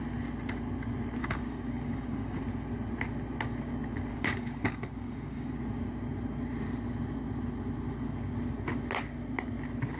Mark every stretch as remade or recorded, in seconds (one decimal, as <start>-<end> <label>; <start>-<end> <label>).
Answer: 0.0-1.2 recorded; 1.2-2.4 remade; 2.4-4.1 recorded; 4.1-5.5 remade; 5.5-10.0 recorded